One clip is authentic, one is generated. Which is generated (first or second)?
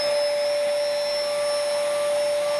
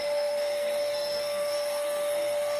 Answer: second